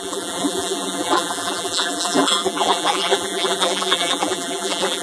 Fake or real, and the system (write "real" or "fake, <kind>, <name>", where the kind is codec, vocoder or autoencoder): fake, vocoder, BigVGAN v2